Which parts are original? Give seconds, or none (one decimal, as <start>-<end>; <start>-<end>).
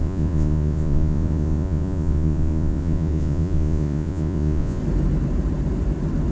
4.8-6.3